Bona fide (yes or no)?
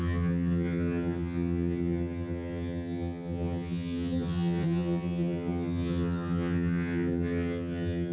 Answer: no